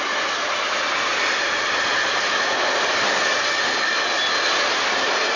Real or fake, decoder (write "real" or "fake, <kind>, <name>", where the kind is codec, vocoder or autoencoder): real